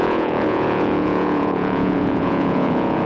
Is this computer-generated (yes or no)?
yes